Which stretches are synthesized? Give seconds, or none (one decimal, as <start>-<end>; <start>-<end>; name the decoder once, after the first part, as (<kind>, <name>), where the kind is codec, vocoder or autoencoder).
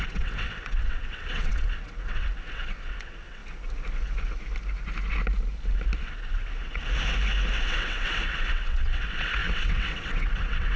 0.0-3.4 (vocoder, WaveNeXt); 6.0-6.8; 7.6-10.8